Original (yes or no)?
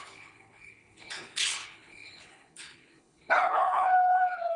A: no